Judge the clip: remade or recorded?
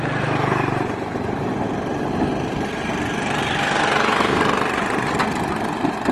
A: recorded